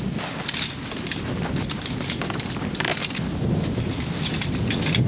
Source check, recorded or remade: recorded